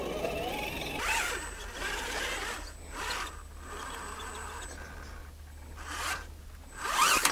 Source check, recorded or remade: recorded